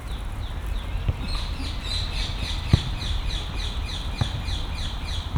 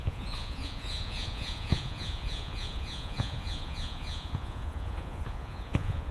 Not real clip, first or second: second